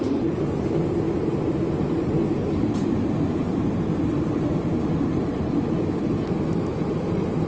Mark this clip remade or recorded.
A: remade